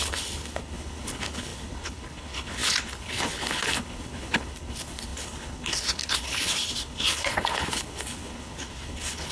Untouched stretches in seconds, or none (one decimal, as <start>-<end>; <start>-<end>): none